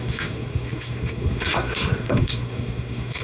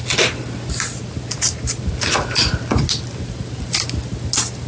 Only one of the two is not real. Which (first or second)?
first